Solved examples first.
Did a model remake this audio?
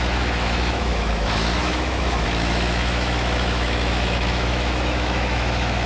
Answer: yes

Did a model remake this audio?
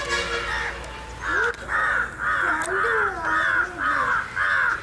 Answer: no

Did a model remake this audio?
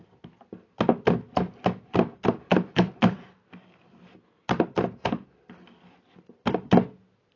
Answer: no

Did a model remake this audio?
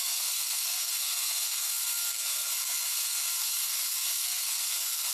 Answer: yes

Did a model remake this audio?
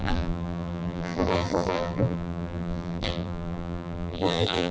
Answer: yes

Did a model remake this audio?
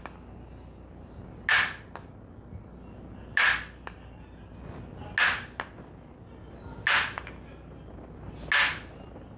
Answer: no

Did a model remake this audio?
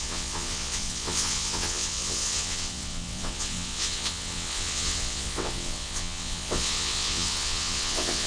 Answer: yes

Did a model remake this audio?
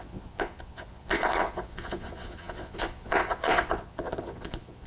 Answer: yes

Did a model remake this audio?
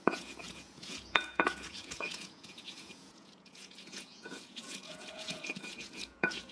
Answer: yes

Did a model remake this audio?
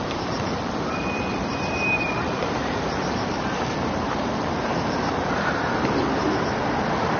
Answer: yes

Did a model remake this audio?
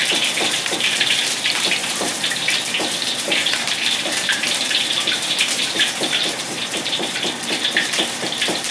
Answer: yes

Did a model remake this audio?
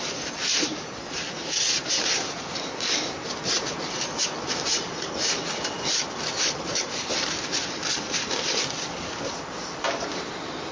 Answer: no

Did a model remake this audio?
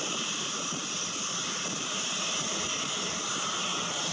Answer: no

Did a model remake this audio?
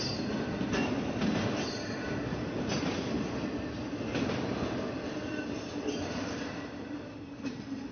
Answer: no